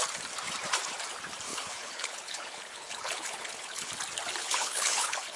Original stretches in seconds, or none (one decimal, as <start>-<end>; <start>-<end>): 0.0-1.5; 3.9-4.4